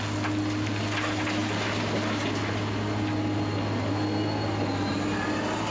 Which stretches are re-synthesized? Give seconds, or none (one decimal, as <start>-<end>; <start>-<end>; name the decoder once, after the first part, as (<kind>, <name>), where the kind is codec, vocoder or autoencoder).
none